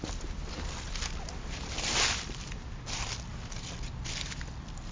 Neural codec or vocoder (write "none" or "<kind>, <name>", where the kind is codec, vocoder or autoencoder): none